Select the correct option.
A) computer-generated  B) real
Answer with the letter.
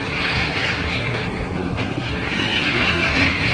A